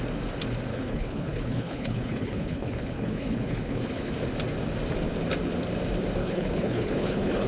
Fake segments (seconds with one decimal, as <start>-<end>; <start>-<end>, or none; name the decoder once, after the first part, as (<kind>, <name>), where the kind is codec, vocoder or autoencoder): 0.7-4.1 (codec, HILCodec); 6.2-7.5